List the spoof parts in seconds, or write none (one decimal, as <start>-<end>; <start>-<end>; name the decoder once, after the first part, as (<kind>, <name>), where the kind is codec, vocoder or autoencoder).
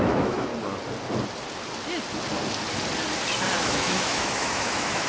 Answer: 0.0-0.5 (autoencoder, DAC-VAE); 3.6-5.1